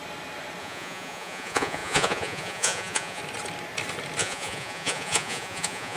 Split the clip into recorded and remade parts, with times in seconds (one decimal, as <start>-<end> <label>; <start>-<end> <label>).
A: 0.0-0.6 recorded; 0.6-3.2 remade; 3.2-4.2 recorded; 4.2-6.0 remade